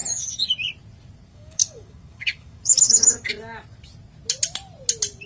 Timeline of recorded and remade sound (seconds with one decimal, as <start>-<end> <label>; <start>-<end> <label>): 0.0-1.3 recorded; 1.3-3.3 remade; 3.3-5.3 recorded